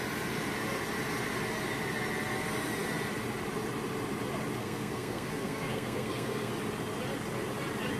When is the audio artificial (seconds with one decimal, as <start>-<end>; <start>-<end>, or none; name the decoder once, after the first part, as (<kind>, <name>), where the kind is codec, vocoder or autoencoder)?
4.6-6.5 (codec, SNAC)